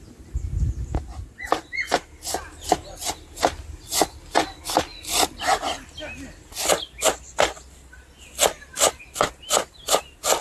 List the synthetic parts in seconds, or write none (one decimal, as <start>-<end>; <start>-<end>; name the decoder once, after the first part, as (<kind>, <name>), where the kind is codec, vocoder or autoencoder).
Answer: none